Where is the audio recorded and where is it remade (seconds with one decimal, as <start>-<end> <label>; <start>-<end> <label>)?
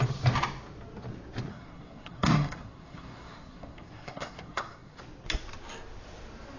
0.0-1.5 recorded; 1.5-5.0 remade; 5.0-6.6 recorded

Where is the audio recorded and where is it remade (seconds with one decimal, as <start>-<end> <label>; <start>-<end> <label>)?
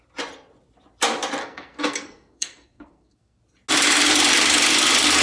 0.0-1.4 recorded; 1.4-3.4 remade; 3.4-5.2 recorded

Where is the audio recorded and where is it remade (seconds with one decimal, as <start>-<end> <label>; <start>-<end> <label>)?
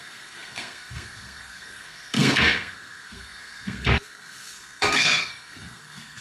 0.0-6.2 remade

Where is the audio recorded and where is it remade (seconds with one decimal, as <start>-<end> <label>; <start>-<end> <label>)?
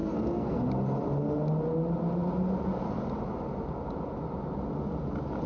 0.0-0.6 remade; 0.6-5.5 recorded